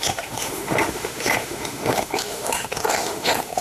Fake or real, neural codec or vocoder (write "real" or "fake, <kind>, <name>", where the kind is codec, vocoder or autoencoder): fake, autoencoder, DAC-VAE